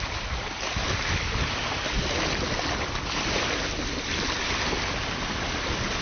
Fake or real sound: real